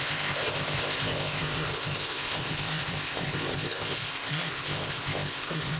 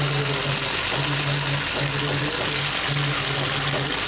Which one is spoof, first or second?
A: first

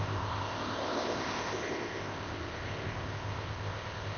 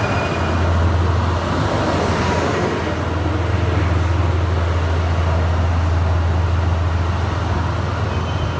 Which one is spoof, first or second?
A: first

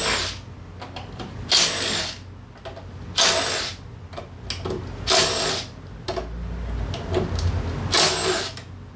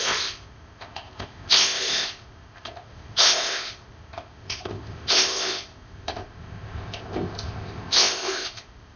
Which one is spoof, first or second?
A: second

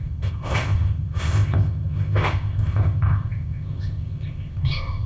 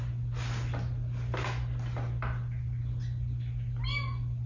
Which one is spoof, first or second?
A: first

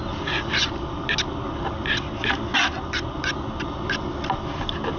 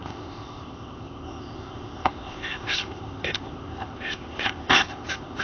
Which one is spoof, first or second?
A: second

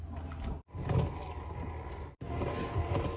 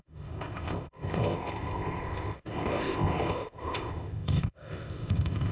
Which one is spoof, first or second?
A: second